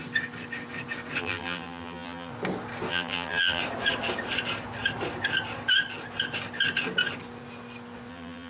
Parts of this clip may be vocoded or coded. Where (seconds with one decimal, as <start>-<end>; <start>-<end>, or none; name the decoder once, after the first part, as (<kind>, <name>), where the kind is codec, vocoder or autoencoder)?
1.2-2.3 (vocoder, BigVGAN v2); 2.9-3.6; 8.1-8.5